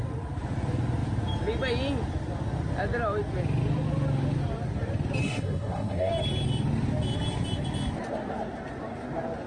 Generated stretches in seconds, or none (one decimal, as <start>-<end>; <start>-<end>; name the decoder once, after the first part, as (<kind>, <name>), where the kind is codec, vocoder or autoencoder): 5.2-6.1 (codec, SNAC)